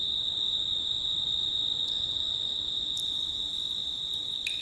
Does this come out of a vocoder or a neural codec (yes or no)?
no